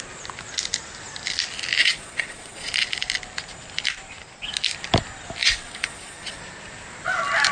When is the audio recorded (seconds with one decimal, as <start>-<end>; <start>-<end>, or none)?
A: 0.0-1.8; 2.7-5.4; 6.4-7.5